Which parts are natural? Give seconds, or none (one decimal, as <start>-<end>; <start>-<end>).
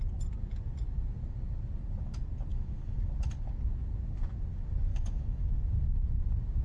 0.0-2.5; 3.0-4.9; 5.5-6.6